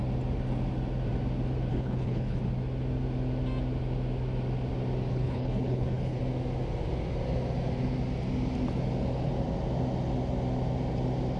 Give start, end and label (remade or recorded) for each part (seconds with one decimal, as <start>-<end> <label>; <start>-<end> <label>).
0.0-1.7 recorded; 1.7-2.4 remade; 2.4-5.1 recorded; 5.1-6.2 remade; 6.2-11.4 recorded